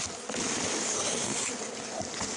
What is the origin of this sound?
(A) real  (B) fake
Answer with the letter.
A